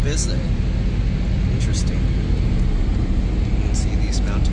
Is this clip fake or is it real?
real